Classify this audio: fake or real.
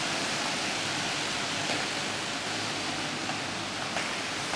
real